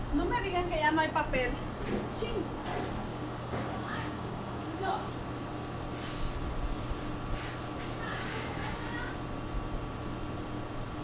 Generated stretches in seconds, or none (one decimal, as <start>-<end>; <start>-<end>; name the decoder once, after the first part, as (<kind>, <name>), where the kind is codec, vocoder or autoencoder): 3.1-5.1 (codec, DAC); 8.1-8.8